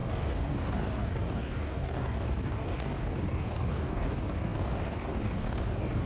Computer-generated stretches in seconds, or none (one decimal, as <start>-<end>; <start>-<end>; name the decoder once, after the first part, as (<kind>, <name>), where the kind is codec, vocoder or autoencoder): 0.0-6.1 (codec, DAC)